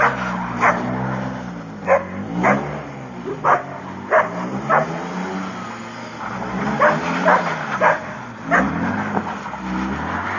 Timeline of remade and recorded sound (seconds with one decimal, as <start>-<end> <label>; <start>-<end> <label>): 0.0-10.4 recorded